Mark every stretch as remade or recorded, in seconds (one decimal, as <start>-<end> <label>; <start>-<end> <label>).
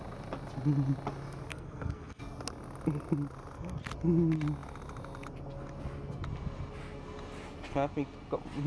0.0-1.5 recorded; 1.5-2.2 remade; 2.2-8.7 recorded